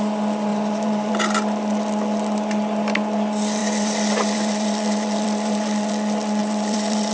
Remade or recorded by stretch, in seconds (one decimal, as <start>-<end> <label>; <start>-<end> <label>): 0.0-0.5 recorded; 0.5-1.1 remade; 1.1-3.6 recorded; 3.6-5.9 remade; 5.9-6.4 recorded; 6.4-7.1 remade

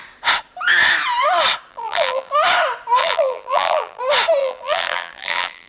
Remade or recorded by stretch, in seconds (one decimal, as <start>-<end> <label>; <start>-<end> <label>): 0.0-1.7 recorded; 1.7-2.3 remade; 2.3-3.0 recorded; 3.0-4.0 remade; 4.0-4.4 recorded; 4.4-5.7 remade

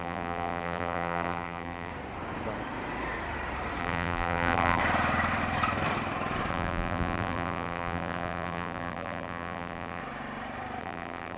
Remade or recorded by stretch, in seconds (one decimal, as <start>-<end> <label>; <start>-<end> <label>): 0.0-1.9 remade; 1.9-3.8 recorded; 3.8-4.8 remade; 4.8-6.5 recorded; 6.5-10.0 remade; 10.0-10.8 recorded; 10.8-11.4 remade